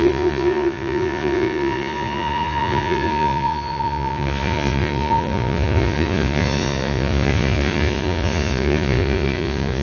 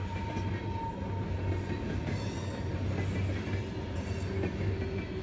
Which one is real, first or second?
second